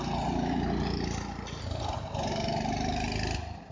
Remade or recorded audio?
recorded